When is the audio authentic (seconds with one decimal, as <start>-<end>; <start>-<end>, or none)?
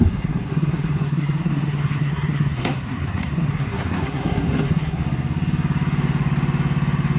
5.0-7.2